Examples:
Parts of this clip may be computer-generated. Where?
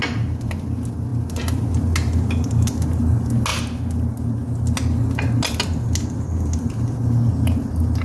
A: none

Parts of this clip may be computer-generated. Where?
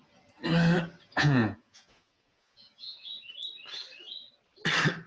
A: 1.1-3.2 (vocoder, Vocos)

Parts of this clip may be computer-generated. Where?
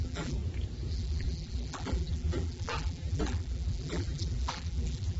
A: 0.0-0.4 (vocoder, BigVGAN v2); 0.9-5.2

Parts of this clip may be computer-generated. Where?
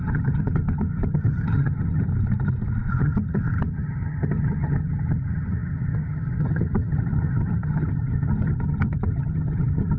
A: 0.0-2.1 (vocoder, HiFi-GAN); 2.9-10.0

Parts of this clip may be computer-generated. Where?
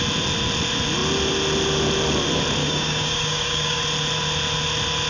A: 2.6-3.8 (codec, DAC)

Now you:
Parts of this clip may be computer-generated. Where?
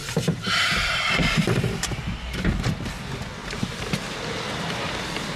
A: 0.0-2.8 (vocoder, BigVGAN v2); 3.4-4.0